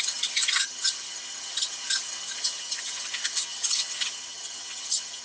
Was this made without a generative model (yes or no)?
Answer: no